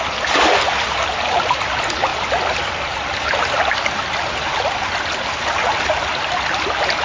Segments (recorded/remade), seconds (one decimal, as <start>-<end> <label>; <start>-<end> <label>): 0.0-7.0 recorded